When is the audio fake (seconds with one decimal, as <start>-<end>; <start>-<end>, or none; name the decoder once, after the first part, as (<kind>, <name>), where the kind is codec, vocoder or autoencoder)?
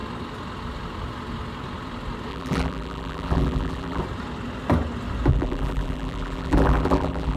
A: 2.3-4.0 (vocoder, BigVGAN v2); 5.3-7.4